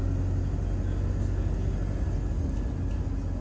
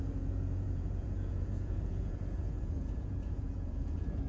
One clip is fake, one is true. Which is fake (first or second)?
second